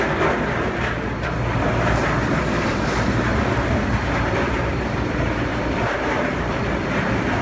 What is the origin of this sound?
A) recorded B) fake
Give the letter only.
B